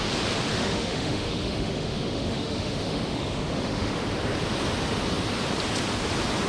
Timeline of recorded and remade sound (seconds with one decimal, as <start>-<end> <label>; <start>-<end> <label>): 0.0-0.5 recorded; 0.5-4.0 remade; 4.0-6.5 recorded